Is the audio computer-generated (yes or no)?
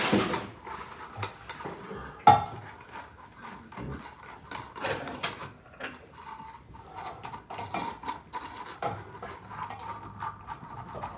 no